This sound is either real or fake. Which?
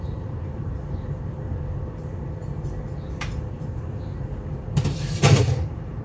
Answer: fake